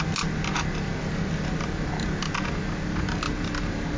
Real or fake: real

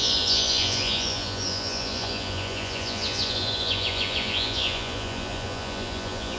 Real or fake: fake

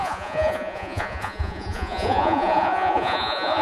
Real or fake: fake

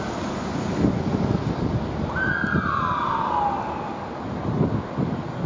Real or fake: real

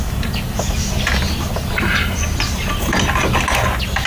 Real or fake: real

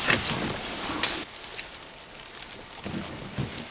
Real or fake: real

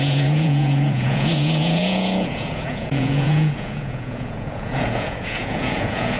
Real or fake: fake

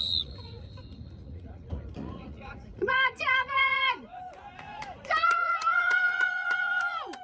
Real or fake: fake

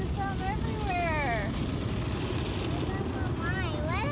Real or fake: real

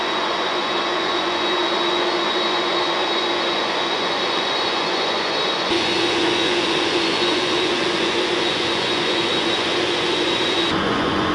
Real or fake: fake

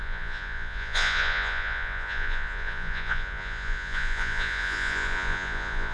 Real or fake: fake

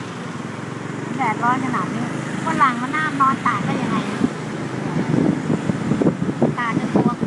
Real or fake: real